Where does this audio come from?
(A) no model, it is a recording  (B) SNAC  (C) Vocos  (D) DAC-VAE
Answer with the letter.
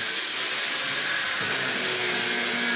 A